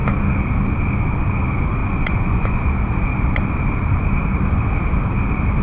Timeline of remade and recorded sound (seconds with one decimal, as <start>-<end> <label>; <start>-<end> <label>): 0.0-1.8 recorded; 1.8-2.7 remade; 2.7-5.6 recorded